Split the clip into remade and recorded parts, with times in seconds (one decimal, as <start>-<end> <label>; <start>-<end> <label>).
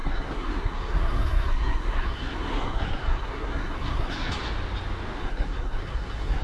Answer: 0.0-4.4 remade; 4.4-5.2 recorded; 5.2-6.4 remade